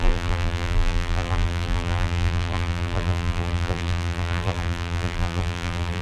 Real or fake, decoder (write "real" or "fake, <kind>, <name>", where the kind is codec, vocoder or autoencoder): fake, vocoder, BigVGAN v2